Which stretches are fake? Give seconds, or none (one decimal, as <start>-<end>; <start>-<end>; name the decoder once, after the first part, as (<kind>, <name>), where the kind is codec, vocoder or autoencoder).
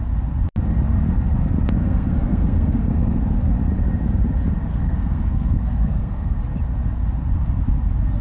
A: 1.8-3.2 (codec, SNAC); 4.7-6.4